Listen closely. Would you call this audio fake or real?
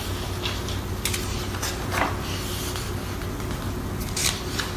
real